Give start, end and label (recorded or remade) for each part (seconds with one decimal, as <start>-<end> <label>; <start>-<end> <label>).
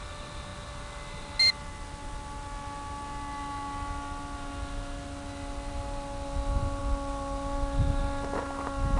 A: 0.0-9.0 recorded